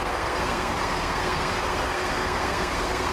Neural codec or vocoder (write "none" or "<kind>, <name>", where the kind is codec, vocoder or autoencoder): codec, SNAC